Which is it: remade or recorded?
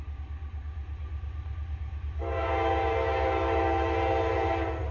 recorded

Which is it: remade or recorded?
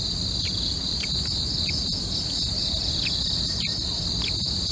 recorded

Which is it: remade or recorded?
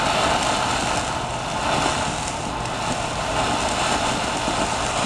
recorded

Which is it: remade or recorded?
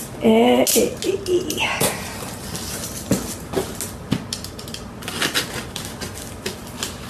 recorded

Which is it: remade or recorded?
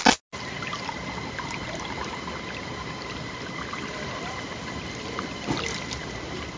recorded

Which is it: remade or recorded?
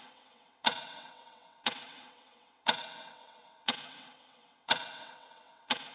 remade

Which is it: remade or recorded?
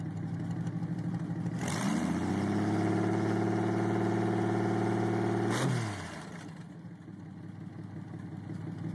recorded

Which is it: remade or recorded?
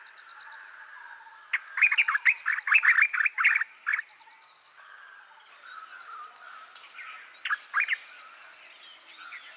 recorded